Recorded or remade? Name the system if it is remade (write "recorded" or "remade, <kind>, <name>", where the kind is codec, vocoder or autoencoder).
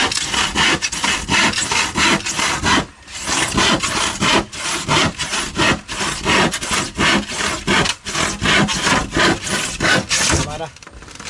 recorded